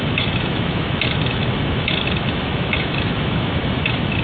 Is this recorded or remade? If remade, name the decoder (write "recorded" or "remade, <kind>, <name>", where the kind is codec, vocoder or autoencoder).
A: remade, autoencoder, DAC-VAE